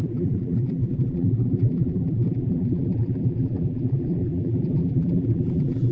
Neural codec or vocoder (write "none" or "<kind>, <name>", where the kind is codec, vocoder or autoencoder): vocoder, BigVGAN v2